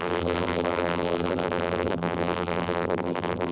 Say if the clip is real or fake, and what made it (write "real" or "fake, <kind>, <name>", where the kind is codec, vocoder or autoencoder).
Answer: fake, vocoder, BigVGAN v2